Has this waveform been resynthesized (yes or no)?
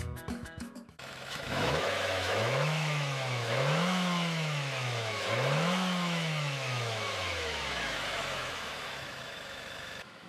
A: yes